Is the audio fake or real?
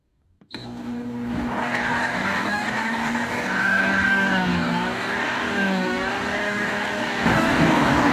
fake